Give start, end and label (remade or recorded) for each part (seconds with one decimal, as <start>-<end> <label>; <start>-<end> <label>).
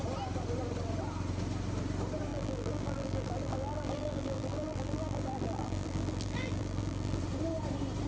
0.0-2.3 recorded; 2.3-7.2 remade; 7.2-8.1 recorded